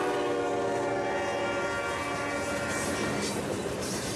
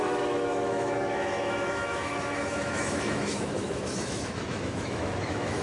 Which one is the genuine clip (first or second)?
first